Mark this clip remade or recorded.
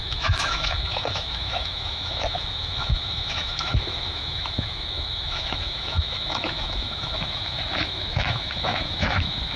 remade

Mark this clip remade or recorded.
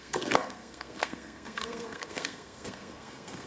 remade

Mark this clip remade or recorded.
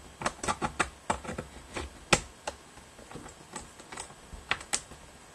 recorded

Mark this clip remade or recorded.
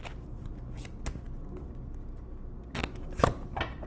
recorded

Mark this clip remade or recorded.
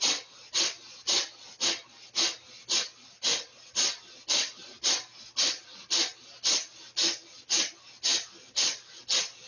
recorded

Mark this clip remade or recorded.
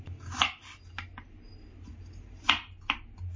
recorded